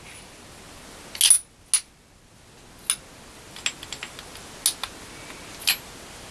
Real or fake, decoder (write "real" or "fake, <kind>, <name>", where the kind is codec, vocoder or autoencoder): real